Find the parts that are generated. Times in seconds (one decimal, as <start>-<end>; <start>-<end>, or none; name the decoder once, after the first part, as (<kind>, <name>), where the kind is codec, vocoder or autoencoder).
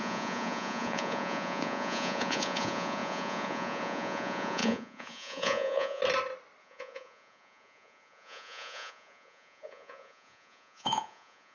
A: 0.0-6.0 (vocoder, Vocos); 6.6-11.5